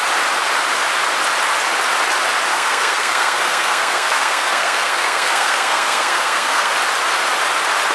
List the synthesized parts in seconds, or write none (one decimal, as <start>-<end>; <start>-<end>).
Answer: 2.5-6.7